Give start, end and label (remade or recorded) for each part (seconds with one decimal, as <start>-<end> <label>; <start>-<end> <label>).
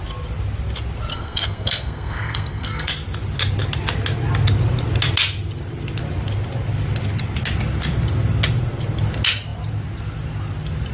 0.0-1.1 recorded; 1.1-2.9 remade; 2.9-10.9 recorded